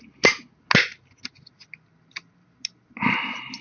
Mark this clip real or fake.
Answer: real